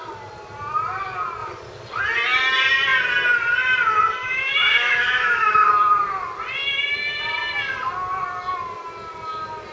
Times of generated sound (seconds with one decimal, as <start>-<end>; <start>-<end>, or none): 4.2-5.7